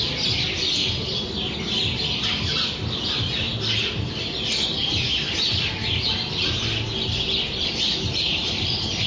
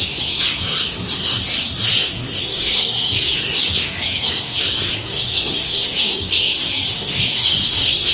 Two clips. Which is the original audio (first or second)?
first